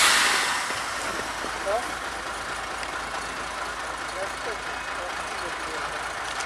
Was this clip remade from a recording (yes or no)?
no